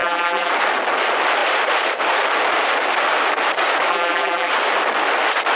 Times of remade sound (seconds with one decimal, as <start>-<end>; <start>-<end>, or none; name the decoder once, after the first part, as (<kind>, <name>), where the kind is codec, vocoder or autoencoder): 0.0-0.5 (vocoder, BigVGAN v2); 3.9-4.5